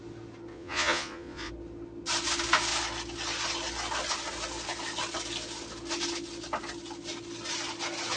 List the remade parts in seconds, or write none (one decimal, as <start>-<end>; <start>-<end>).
0.5-1.5